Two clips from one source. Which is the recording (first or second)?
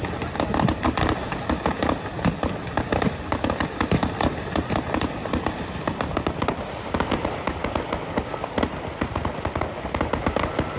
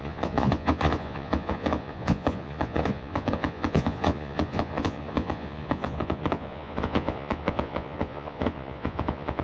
first